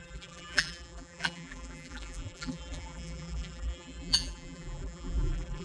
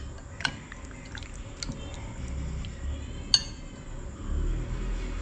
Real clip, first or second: second